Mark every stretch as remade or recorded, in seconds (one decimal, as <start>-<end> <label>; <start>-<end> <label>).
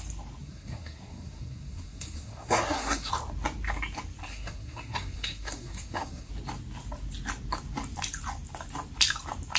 0.0-0.4 recorded; 0.4-3.1 remade; 3.1-4.3 recorded; 4.3-6.3 remade; 6.3-9.6 recorded